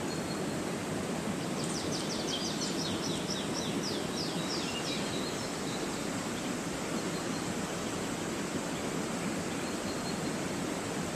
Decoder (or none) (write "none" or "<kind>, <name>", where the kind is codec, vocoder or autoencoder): none